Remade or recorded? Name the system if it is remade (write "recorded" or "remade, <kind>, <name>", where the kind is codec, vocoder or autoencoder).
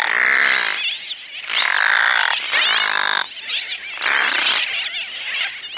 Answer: recorded